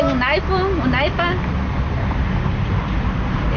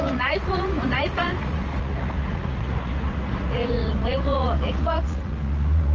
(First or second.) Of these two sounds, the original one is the first